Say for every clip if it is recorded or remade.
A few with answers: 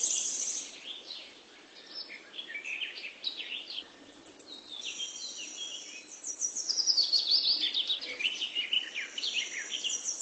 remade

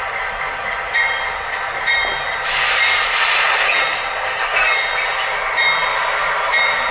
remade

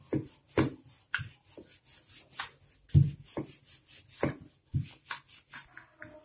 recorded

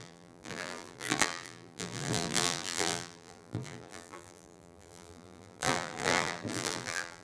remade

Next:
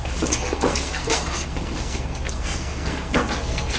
remade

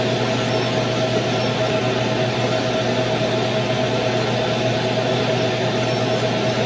recorded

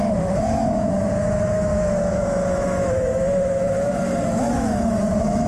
remade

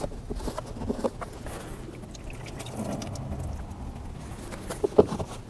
recorded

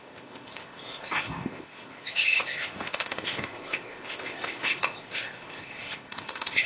remade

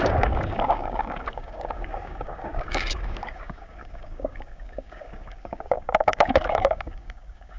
remade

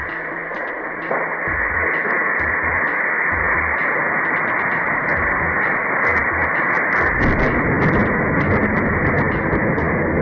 recorded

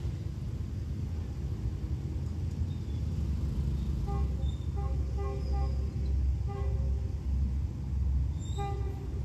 recorded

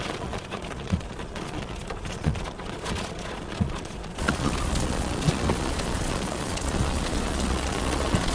remade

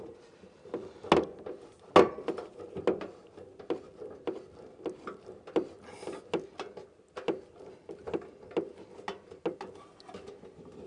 recorded